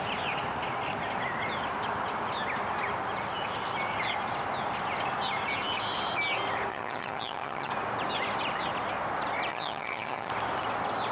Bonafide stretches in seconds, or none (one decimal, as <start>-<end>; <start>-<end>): 0.0-6.7; 7.7-9.5; 10.3-11.1